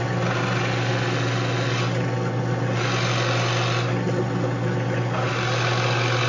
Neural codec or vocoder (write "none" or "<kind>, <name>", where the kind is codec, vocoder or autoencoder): none